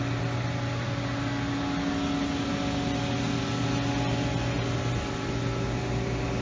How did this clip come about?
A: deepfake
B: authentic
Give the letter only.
B